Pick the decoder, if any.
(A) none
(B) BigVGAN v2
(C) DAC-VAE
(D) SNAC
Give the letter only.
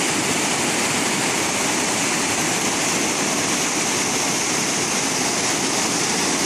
A